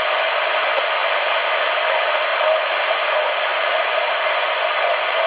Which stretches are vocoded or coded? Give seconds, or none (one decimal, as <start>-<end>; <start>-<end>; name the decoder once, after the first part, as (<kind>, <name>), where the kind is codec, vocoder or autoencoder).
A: 0.0-1.0 (vocoder, Vocos); 1.6-2.3; 2.9-5.3